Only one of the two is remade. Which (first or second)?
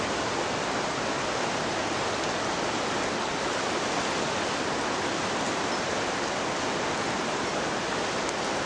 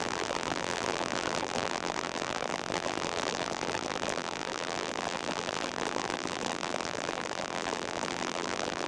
second